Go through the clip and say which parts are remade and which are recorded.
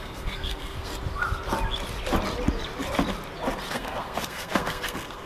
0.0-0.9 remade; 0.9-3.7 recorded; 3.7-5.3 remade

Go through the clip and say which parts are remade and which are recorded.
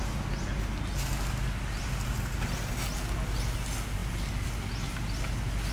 0.0-5.7 recorded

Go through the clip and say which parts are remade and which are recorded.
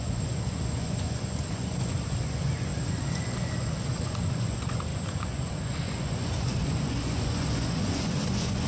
0.0-8.7 remade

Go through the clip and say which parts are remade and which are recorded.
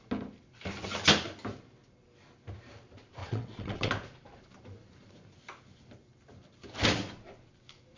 0.0-3.2 recorded; 3.2-3.9 remade; 3.9-8.0 recorded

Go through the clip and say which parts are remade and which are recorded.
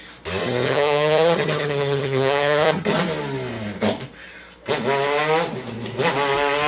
0.0-0.4 recorded; 0.4-3.0 remade; 3.0-6.7 recorded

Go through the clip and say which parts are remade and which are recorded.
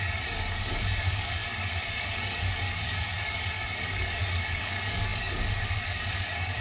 0.0-6.6 remade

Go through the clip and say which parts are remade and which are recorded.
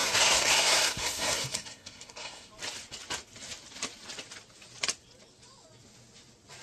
0.0-2.5 remade; 2.5-6.6 recorded